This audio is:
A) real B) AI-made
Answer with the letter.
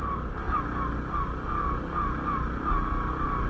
A